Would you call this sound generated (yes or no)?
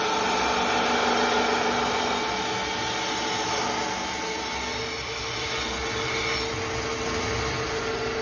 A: no